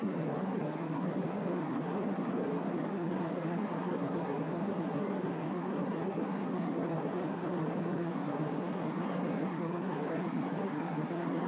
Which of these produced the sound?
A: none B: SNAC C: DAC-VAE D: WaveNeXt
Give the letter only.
B